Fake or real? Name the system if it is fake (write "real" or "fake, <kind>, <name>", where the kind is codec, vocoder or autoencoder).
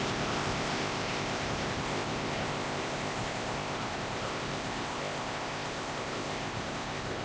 fake, codec, ZipCodec